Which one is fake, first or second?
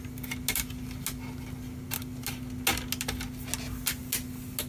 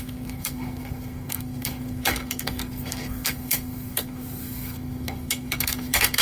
second